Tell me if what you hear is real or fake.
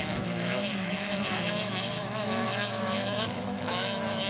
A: fake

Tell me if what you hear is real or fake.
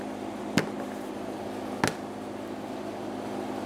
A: real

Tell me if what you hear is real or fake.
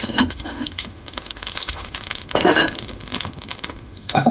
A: fake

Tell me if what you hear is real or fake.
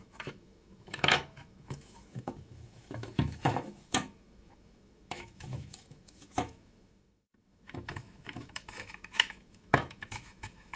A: fake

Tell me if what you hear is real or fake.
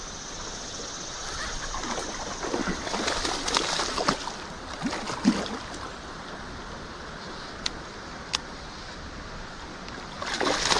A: real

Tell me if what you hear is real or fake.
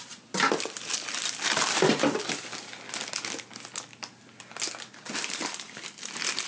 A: real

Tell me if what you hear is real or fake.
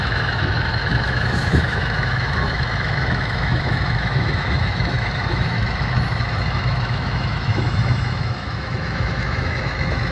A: fake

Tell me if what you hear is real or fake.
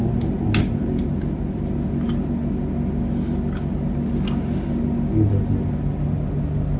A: real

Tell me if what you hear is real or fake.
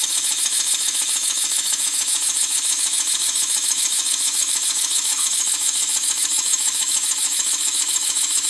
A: fake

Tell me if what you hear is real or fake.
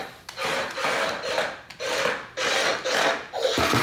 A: real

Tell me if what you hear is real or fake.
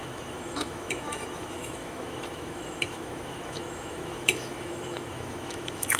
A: fake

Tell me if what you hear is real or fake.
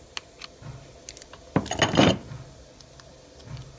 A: real